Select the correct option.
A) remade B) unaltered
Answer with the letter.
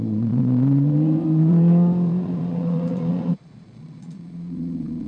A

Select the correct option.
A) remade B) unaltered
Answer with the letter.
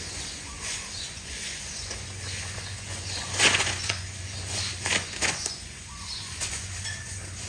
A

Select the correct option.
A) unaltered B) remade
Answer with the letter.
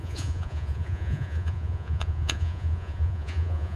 B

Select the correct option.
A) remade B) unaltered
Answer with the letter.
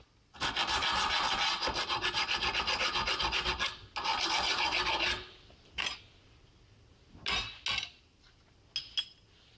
B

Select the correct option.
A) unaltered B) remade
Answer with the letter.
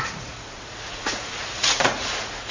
B